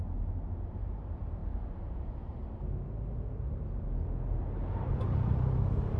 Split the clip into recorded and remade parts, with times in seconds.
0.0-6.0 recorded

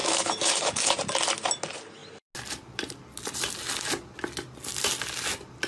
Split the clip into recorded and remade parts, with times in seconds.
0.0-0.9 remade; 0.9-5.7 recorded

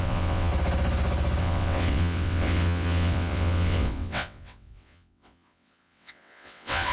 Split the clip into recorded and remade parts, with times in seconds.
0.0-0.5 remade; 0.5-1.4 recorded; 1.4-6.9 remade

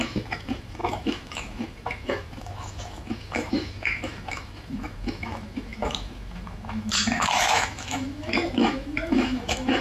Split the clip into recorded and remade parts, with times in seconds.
0.0-9.8 remade